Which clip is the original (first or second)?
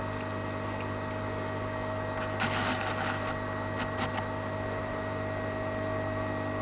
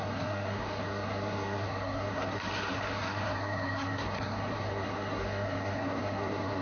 first